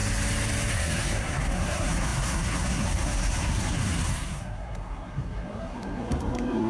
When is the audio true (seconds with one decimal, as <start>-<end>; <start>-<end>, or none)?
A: 0.0-0.7